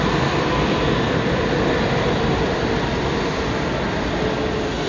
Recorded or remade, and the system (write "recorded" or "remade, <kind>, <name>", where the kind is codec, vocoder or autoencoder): recorded